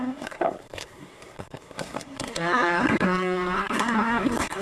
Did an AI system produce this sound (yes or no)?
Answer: yes